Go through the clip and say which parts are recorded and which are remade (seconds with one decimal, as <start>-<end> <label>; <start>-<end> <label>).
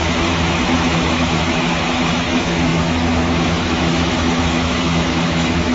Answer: 0.0-5.7 remade